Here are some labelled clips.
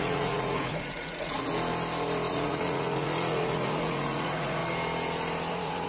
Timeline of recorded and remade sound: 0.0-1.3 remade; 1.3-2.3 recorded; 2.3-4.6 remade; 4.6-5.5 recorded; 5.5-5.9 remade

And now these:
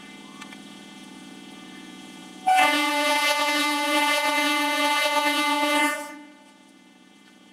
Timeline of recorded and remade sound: 0.0-7.5 remade